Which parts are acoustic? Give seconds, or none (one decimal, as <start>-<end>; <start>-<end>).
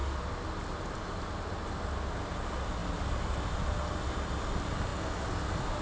0.0-5.8